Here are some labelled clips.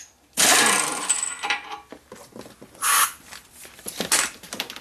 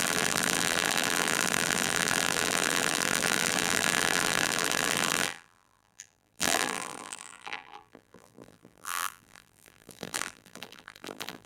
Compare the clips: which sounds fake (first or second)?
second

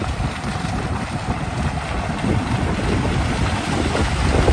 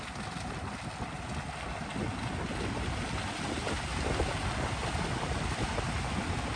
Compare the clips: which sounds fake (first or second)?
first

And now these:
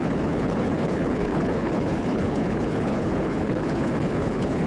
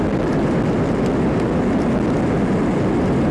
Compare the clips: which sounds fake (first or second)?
first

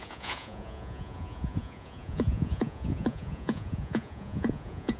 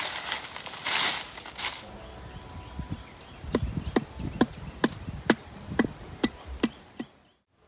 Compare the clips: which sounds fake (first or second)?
first